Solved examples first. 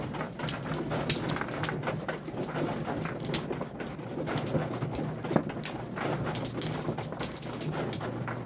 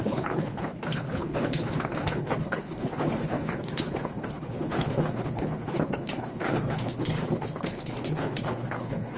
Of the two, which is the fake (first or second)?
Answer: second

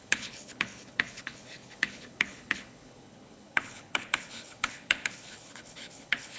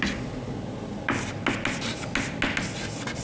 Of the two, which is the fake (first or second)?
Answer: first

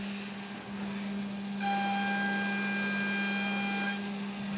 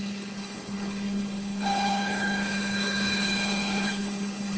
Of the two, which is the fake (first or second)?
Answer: second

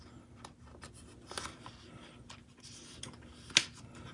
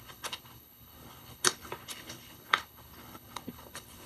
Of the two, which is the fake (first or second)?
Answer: second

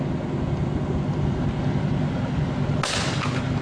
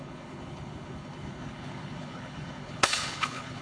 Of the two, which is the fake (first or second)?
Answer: second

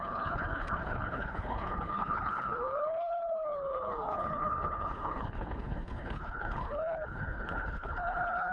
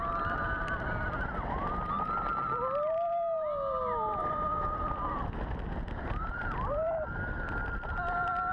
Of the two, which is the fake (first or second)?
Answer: first